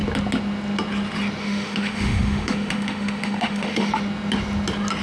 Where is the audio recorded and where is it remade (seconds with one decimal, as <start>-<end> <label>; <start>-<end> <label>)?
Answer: 0.0-1.4 recorded; 1.4-3.9 remade; 3.9-5.0 recorded